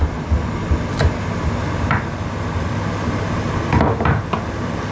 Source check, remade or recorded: recorded